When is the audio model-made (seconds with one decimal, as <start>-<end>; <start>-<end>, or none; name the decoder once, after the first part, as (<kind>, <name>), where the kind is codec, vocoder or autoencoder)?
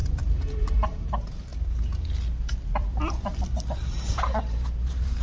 0.6-1.5 (vocoder, BigVGAN v2); 4.4-5.2